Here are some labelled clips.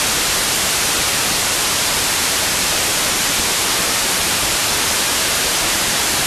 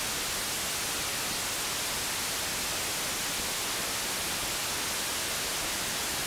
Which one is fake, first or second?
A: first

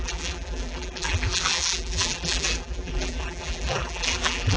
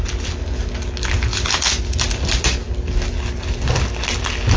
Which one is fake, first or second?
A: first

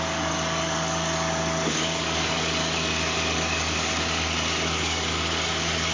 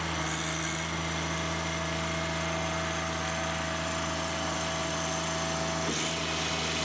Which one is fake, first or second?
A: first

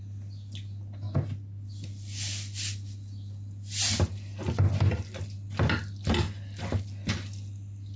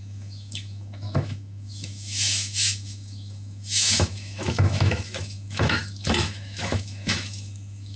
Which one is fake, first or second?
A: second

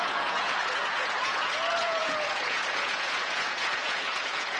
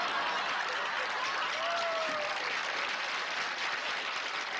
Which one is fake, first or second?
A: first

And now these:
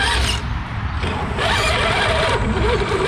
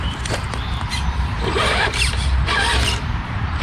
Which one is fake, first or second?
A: second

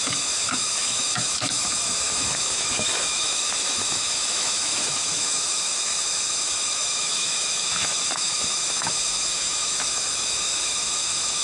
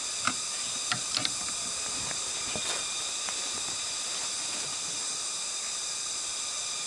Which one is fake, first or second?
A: first